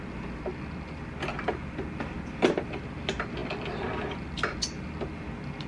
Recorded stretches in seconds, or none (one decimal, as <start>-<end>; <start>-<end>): 0.0-5.7